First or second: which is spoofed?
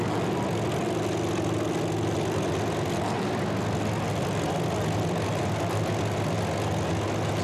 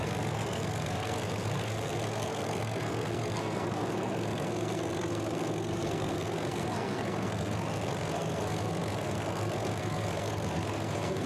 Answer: second